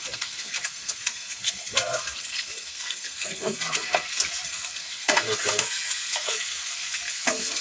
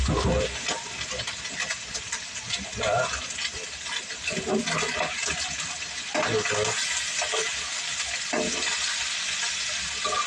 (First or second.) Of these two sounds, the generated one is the first